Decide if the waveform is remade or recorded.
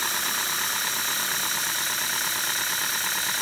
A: recorded